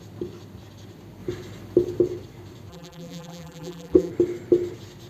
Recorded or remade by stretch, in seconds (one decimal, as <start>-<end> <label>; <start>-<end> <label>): 0.0-2.7 recorded; 2.7-4.1 remade; 4.1-5.1 recorded